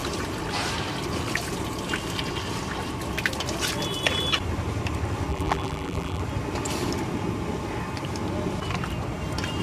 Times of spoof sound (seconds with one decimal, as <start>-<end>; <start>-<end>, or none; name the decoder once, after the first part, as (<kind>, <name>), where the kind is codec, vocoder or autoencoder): 5.3-6.2 (vocoder, BigVGAN v2)

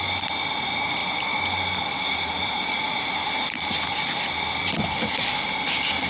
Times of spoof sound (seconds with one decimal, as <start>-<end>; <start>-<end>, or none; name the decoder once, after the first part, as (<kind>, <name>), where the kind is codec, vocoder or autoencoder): none

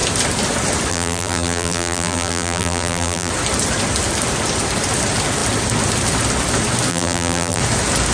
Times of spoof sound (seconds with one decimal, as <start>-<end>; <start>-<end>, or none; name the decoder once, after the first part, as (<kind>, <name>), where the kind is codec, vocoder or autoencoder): 0.9-3.3 (vocoder, BigVGAN v2); 6.9-7.6

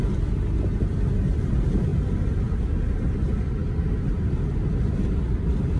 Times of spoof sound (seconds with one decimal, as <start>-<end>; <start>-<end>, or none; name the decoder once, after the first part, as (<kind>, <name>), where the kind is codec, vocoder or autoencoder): none

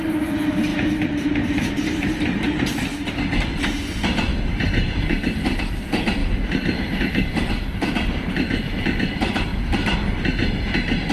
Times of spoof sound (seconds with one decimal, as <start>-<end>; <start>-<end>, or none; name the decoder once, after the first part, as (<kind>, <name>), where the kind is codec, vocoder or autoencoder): 0.7-2.7 (vocoder, BigVGAN v2); 4.3-5.6; 6.2-7.5